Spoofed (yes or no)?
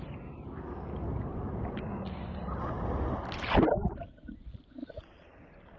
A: no